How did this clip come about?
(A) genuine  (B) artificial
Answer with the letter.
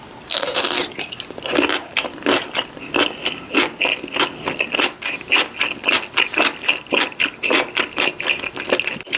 A